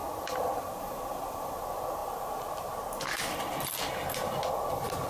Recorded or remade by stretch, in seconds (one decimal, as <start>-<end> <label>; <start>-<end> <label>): 0.0-1.6 remade; 1.6-5.1 recorded